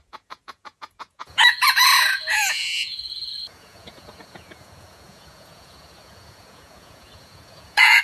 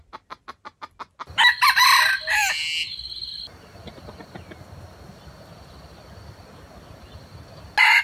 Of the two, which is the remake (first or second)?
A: first